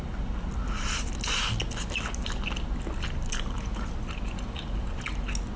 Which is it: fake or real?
real